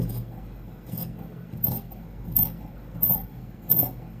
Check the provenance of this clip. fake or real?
fake